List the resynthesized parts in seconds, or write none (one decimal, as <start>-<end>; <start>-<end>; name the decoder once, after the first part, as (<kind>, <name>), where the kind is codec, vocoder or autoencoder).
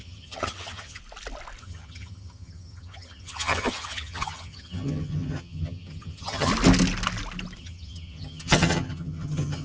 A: 0.0-1.0 (vocoder, HiFi-GAN); 1.6-6.5; 7.6-9.6